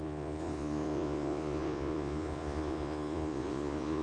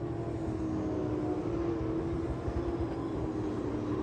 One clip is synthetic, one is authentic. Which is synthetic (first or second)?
first